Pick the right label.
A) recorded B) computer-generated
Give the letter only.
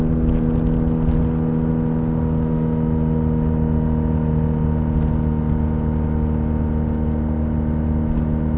A